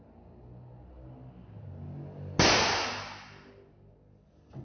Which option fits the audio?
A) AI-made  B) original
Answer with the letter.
B